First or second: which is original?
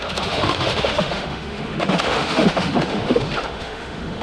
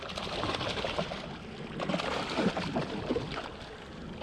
second